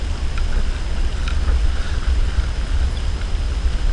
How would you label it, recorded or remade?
recorded